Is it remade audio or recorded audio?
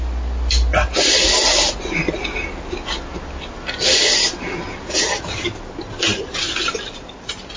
recorded